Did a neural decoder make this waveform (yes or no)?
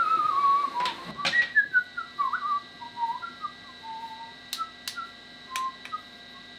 no